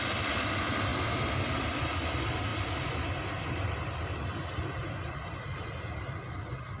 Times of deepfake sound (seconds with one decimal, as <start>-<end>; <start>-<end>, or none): none